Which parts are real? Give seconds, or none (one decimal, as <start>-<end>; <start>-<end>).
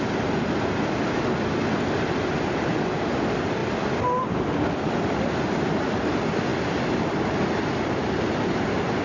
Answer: 0.0-9.0